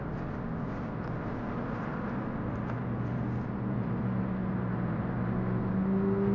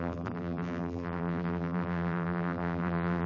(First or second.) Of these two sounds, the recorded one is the first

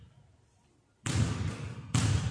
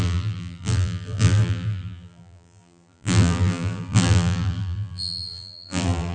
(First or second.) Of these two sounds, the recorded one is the first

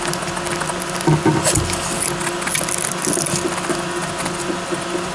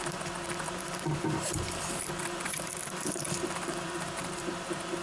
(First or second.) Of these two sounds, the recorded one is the first